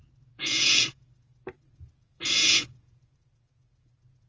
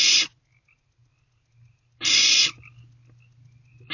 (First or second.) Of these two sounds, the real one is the second